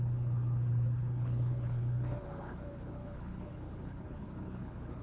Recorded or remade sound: remade